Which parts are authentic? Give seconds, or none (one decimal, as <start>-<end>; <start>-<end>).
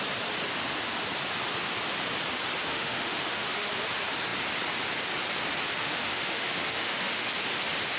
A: 0.0-2.7; 3.7-5.8; 7.3-8.0